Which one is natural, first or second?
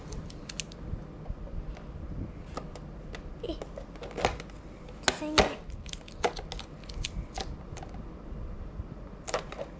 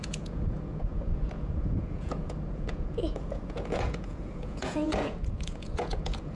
first